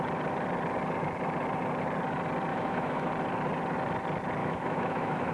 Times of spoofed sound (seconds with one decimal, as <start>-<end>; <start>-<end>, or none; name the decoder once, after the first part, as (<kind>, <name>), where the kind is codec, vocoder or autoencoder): 2.5-3.1 (autoencoder, DAC-VAE); 4.4-5.3